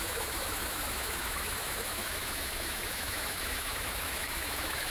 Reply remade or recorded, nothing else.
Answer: remade